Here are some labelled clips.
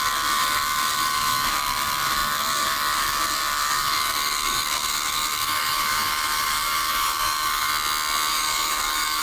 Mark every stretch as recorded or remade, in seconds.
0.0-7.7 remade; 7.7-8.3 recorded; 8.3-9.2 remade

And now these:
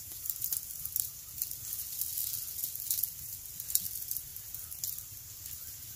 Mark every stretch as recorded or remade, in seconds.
0.0-0.6 remade; 0.6-6.0 recorded

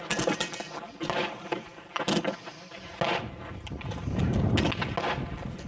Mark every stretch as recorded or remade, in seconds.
0.0-5.7 recorded

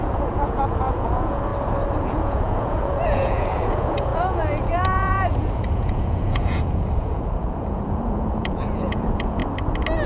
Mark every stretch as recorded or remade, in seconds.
0.0-1.5 remade; 1.5-2.0 recorded; 2.0-9.4 remade; 9.4-10.1 recorded

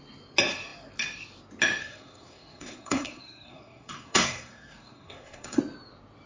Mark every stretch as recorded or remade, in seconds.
0.0-1.8 recorded; 1.8-5.6 remade; 5.6-6.3 recorded

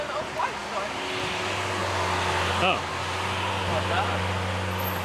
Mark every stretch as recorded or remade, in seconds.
0.0-5.0 recorded

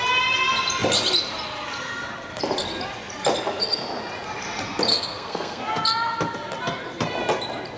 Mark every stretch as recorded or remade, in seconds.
0.0-4.9 recorded; 4.9-5.6 remade; 5.6-7.8 recorded